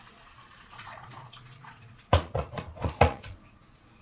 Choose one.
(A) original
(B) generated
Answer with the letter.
B